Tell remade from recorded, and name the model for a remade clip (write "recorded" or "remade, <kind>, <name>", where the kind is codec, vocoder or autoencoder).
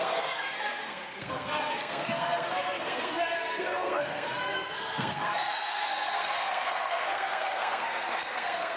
remade, codec, SNAC